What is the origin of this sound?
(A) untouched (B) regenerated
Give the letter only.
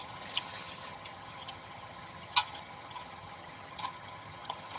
B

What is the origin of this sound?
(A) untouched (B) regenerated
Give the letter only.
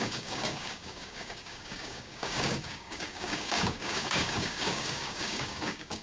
B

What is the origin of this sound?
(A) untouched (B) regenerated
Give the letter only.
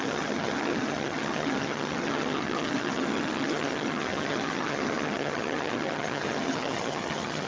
B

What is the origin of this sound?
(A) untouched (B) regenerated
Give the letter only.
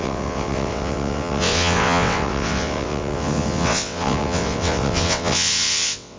B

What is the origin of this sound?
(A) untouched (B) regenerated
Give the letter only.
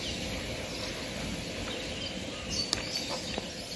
A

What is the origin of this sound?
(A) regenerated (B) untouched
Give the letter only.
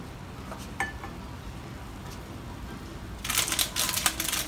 B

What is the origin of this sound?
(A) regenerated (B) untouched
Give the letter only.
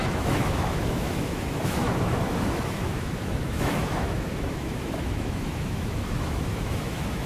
A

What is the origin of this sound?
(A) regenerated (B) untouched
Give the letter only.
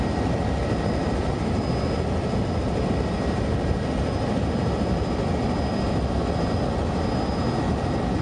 B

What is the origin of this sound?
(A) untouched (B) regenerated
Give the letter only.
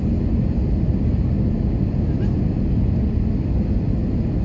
A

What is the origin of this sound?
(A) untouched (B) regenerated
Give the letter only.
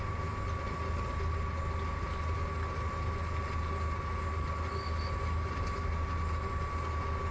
A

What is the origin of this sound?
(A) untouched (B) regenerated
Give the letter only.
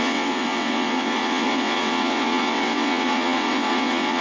B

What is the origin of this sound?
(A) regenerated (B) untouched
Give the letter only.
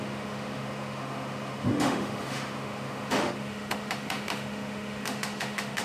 A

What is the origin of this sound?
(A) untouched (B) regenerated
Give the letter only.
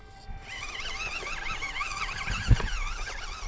A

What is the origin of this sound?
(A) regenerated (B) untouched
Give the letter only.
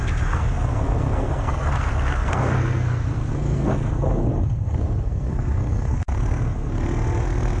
A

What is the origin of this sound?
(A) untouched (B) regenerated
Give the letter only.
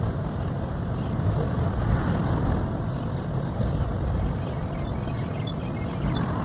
A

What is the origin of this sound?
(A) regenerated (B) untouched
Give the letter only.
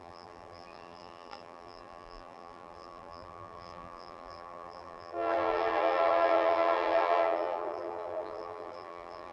A